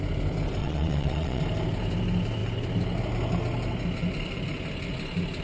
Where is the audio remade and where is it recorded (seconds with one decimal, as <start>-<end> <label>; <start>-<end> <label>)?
0.0-0.6 recorded; 0.6-1.4 remade; 1.4-5.4 recorded